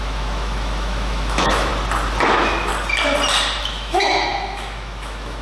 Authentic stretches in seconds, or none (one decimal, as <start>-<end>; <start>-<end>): 1.7-2.3; 2.7-3.6